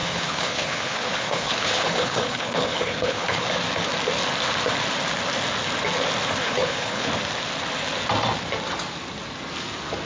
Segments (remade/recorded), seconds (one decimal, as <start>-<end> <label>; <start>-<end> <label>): 0.0-3.5 remade; 3.5-6.4 recorded; 6.4-7.1 remade; 7.1-10.1 recorded